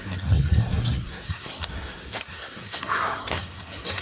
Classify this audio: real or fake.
fake